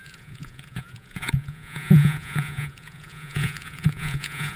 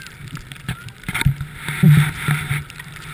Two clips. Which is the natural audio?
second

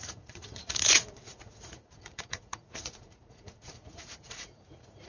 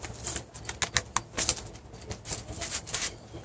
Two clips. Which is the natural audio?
second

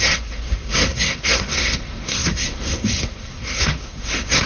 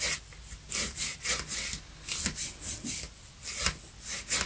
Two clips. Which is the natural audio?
second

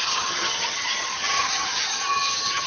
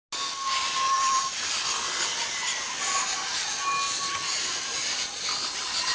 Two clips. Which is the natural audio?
second